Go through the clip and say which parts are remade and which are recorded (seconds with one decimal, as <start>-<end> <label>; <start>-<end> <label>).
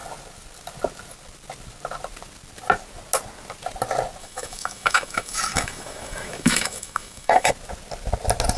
0.0-4.2 recorded; 4.2-7.5 remade; 7.5-8.6 recorded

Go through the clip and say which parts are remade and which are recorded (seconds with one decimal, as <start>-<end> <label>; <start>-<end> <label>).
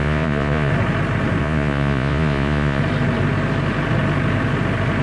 0.0-0.7 remade; 0.7-1.4 recorded; 1.4-2.8 remade; 2.8-5.0 recorded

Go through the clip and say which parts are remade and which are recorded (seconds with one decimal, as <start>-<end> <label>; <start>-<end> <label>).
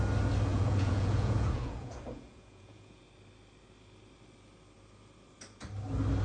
0.0-0.5 recorded; 0.5-3.0 remade; 3.0-6.2 recorded